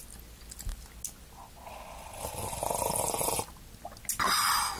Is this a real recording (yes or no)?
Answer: yes